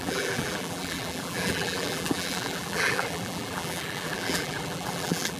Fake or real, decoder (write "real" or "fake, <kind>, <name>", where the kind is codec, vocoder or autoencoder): fake, vocoder, BigVGAN v2